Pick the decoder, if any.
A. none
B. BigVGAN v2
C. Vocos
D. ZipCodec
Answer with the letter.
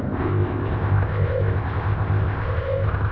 D